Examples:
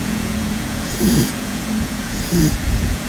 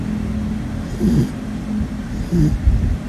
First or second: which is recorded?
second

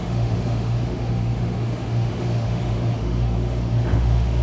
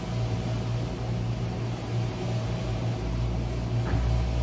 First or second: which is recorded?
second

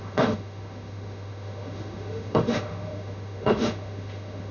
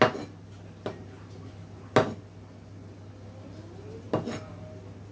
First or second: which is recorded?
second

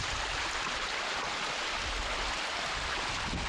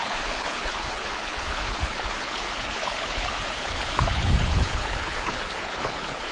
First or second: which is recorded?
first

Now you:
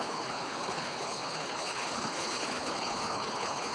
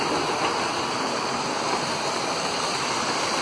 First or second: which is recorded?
second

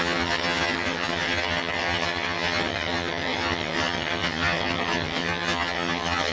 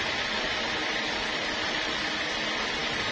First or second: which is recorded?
second